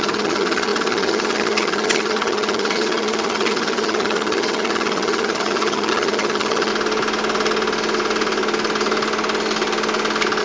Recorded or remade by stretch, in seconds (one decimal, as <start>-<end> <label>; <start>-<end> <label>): 0.0-6.7 remade; 6.7-10.4 recorded